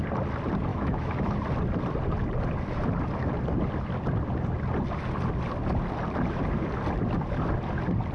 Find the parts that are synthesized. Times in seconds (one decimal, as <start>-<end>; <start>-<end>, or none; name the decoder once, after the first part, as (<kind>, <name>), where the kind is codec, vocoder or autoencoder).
0.7-1.4 (autoencoder, DAC-VAE)